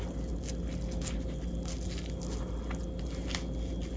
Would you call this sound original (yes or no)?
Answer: yes